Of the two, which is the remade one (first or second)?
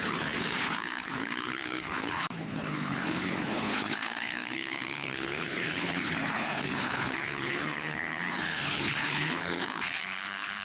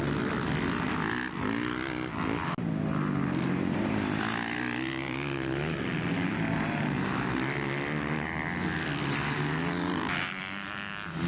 first